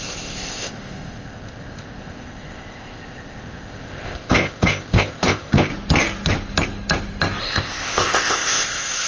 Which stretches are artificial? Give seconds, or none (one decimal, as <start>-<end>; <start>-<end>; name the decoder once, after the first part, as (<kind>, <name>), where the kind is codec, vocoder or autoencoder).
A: 0.0-5.7 (codec, ZipCodec); 7.4-9.1